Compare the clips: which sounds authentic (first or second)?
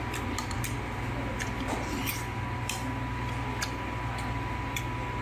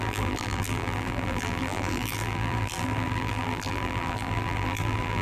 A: first